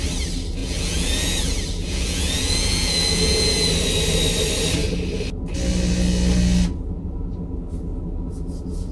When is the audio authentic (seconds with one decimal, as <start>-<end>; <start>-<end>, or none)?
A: 0.0-0.6; 3.7-8.9